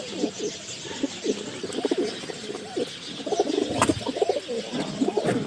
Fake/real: real